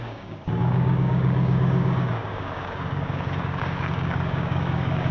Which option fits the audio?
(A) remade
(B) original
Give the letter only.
A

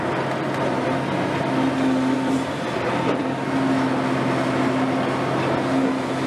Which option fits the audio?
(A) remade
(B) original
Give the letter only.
B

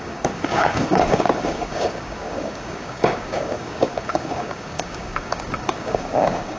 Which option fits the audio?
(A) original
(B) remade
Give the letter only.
B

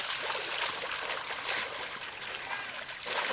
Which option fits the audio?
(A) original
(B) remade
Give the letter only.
A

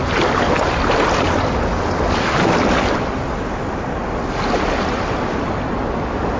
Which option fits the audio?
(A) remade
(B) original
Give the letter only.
B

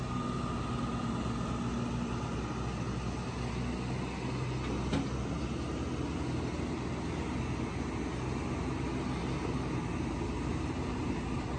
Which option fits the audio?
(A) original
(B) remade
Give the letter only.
A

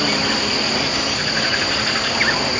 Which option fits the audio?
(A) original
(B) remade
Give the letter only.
A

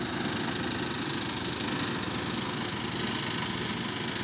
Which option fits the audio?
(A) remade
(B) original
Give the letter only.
B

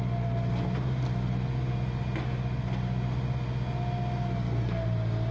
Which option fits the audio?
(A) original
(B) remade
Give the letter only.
A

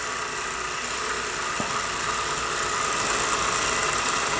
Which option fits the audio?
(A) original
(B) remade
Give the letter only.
A